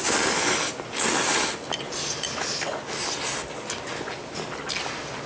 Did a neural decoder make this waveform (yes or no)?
no